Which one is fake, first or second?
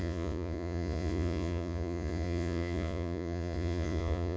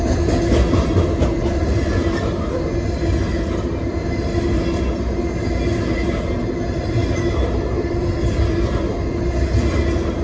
first